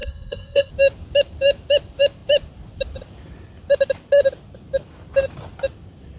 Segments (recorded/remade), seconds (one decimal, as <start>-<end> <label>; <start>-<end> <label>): 0.0-0.7 remade; 0.7-6.2 recorded